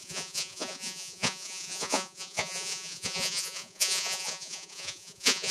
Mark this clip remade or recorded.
remade